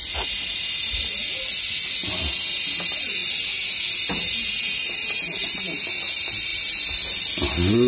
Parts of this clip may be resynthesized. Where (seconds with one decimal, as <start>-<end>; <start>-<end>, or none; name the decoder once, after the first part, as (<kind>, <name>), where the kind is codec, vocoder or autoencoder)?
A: none